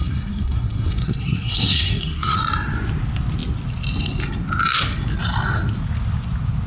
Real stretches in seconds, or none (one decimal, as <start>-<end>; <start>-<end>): 2.4-6.7